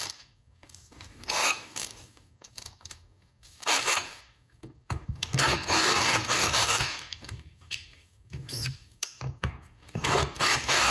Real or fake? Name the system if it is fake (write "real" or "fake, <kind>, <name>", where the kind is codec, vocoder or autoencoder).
fake, codec, DAC